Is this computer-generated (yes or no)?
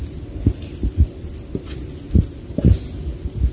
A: no